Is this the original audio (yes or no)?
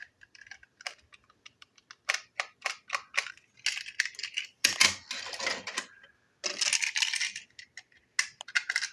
yes